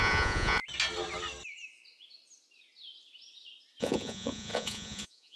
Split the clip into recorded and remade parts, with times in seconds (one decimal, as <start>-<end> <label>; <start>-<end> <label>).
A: 0.0-0.6 remade; 0.6-3.8 recorded; 3.8-5.4 remade